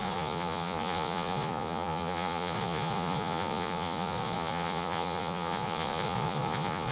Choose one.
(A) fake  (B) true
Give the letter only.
A